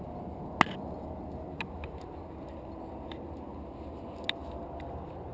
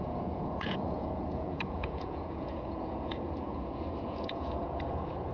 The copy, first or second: second